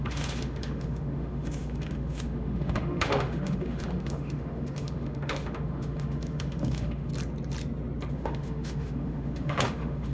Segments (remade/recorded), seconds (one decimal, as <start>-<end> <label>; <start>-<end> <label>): 0.0-7.1 remade; 7.1-8.1 recorded; 8.1-10.1 remade